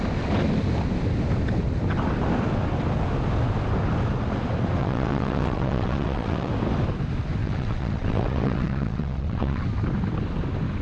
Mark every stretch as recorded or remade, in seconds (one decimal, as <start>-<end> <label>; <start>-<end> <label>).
0.0-4.8 recorded; 4.8-6.5 remade; 6.5-7.4 recorded; 7.4-9.6 remade; 9.6-10.8 recorded